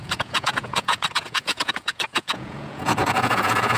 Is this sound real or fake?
fake